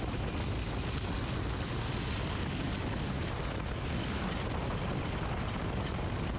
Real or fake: real